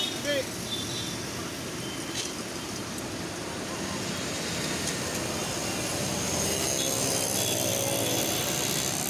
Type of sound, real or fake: real